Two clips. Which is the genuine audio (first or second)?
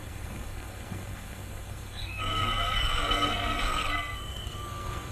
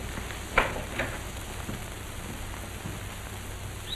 second